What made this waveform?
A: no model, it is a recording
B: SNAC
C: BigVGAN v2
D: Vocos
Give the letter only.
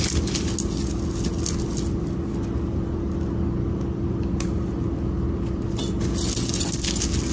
A